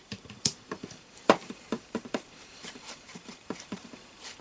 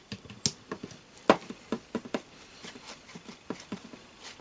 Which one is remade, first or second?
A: first